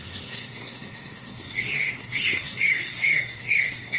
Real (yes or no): no